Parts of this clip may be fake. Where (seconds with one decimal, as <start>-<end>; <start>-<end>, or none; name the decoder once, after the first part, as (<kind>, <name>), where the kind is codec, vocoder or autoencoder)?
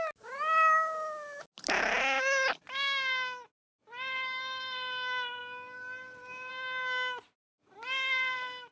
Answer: none